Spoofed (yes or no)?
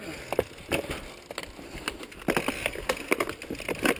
no